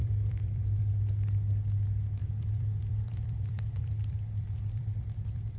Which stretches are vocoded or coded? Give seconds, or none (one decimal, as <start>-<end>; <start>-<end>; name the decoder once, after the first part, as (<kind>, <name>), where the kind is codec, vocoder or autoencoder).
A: 0.0-0.8 (vocoder, BigVGAN v2); 2.2-5.6